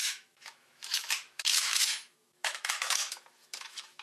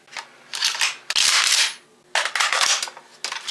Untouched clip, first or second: second